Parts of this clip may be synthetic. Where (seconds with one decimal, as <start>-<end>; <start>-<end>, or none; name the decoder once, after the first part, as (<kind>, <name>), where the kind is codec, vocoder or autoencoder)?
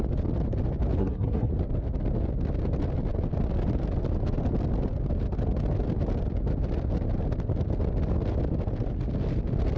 1.0-1.5 (codec, SNAC)